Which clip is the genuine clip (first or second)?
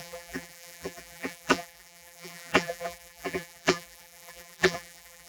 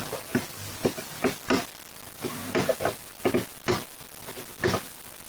second